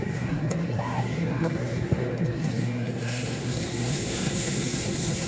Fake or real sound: fake